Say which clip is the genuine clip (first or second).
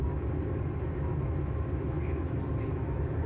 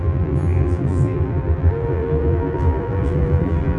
first